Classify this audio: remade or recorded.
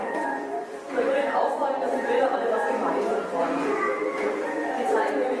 remade